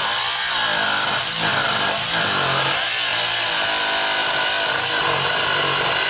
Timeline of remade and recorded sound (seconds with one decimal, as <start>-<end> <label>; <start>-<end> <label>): 0.0-6.1 recorded